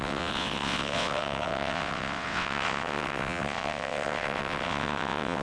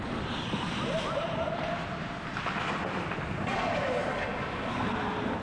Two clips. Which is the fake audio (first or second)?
first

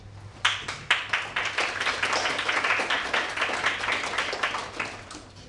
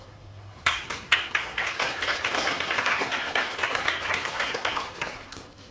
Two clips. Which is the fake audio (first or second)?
second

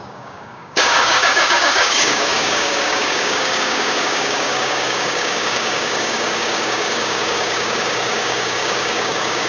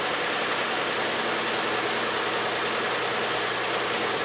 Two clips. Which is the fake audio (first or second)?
first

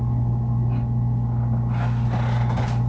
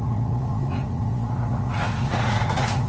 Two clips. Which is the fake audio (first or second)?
second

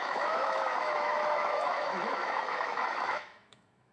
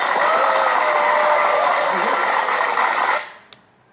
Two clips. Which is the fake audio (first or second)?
first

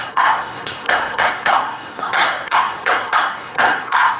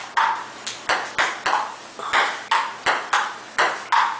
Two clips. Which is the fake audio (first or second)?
first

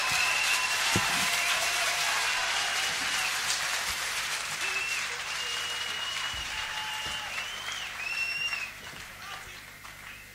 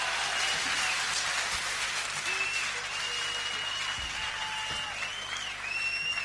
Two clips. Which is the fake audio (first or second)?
first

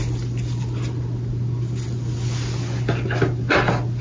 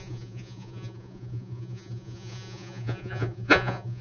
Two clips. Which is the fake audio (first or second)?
second